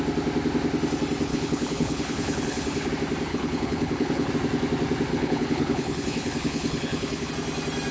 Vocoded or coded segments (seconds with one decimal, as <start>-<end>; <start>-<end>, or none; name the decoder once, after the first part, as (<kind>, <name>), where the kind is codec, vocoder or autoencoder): 1.3-2.9 (codec, HILCodec); 3.3-4.3; 5.1-7.3